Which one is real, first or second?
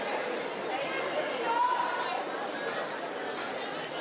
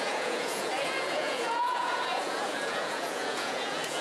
first